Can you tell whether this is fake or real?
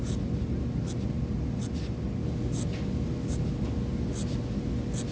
real